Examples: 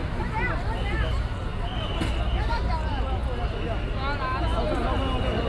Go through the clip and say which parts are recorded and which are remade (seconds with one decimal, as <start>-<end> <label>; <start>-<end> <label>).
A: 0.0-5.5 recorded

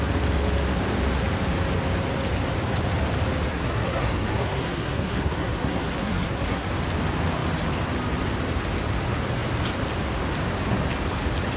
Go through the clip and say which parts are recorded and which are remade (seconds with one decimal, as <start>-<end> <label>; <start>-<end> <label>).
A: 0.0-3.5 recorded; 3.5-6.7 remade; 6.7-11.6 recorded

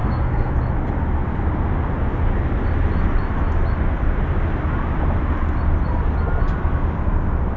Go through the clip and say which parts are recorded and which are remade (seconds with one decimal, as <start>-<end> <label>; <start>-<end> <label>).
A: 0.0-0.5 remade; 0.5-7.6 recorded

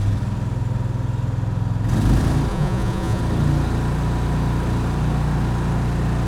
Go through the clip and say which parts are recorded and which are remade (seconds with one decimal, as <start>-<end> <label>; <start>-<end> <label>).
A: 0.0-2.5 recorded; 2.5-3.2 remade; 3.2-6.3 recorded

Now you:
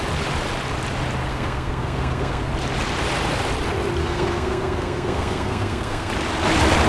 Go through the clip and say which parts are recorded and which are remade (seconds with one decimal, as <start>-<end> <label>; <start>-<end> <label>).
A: 0.0-1.2 recorded; 1.2-2.5 remade; 2.5-4.0 recorded; 4.0-6.1 remade; 6.1-6.9 recorded

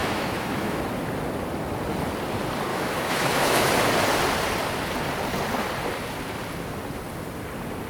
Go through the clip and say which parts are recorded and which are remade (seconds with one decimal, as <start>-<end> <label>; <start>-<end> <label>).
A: 0.0-0.8 remade; 0.8-2.7 recorded; 2.7-3.7 remade; 3.7-7.9 recorded

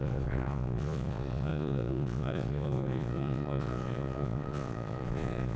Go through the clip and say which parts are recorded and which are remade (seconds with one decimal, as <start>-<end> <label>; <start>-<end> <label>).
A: 0.0-5.6 remade

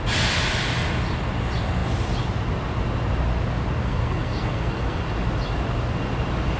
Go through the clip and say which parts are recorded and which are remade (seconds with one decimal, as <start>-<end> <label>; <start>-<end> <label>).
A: 0.0-3.8 recorded; 3.8-5.0 remade; 5.0-6.6 recorded